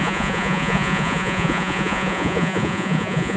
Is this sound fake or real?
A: fake